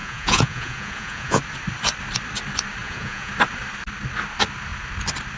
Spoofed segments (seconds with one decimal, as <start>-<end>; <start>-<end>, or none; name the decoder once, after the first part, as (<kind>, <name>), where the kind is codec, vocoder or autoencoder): 0.0-1.4 (vocoder, Vocos); 2.8-3.3